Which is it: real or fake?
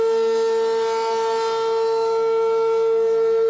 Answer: real